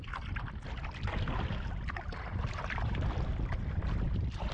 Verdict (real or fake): real